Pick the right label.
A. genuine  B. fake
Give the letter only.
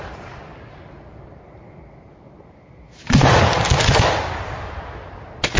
A